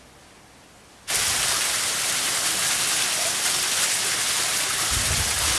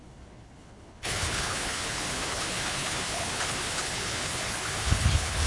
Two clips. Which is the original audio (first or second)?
first